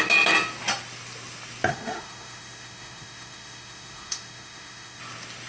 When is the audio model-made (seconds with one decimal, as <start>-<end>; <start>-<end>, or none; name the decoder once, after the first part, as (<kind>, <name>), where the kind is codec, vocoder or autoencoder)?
1.7-5.0 (autoencoder, DAC-VAE)